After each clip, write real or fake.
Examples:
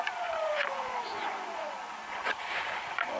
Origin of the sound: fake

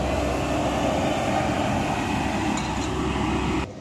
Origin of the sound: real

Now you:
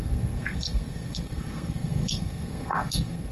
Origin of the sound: fake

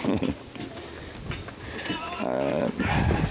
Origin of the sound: real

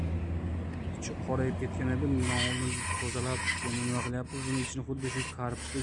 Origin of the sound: real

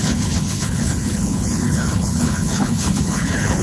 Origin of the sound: fake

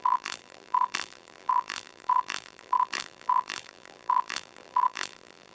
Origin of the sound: fake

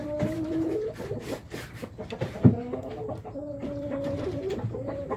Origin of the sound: fake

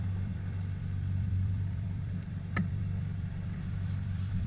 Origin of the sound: fake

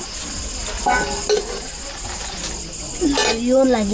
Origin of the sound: real